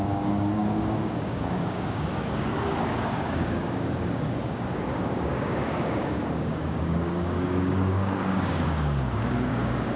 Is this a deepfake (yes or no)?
yes